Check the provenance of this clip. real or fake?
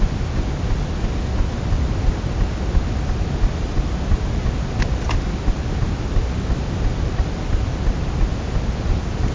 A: real